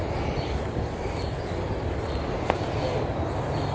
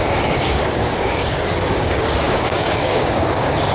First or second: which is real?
first